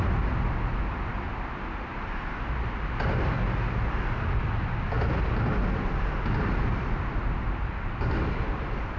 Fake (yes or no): no